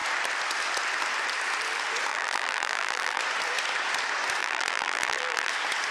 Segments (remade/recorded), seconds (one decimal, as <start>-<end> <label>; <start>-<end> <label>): 0.0-2.1 recorded; 2.1-3.2 remade; 3.2-4.4 recorded; 4.4-5.5 remade; 5.5-5.9 recorded